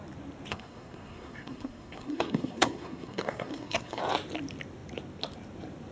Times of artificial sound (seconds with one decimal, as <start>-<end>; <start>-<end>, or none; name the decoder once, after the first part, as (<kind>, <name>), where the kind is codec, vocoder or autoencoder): 0.5-4.0 (codec, SNAC)